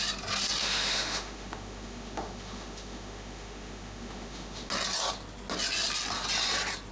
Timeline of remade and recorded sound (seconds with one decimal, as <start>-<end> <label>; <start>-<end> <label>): 0.0-0.6 recorded; 0.6-4.7 remade; 4.7-6.9 recorded